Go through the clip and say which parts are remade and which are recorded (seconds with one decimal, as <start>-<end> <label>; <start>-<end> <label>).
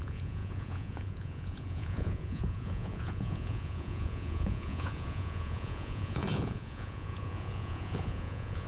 0.0-8.7 remade